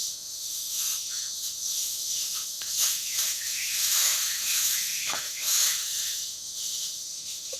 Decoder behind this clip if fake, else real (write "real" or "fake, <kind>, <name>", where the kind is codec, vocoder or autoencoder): fake, autoencoder, DAC-VAE